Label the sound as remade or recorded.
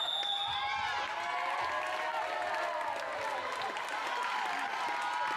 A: recorded